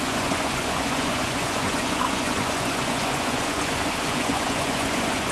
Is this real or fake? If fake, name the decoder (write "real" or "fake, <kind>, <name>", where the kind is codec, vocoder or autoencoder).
fake, vocoder, Vocos